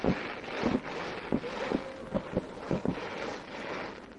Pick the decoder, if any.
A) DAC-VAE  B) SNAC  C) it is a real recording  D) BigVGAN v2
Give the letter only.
C